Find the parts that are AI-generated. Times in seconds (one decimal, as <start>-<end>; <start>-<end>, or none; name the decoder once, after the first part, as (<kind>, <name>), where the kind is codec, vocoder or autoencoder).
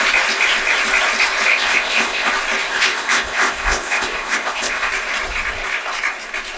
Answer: 1.5-2.3 (codec, ZipCodec); 2.7-4.9